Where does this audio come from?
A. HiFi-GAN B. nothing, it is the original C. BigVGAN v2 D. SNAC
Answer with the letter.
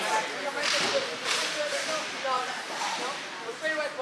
B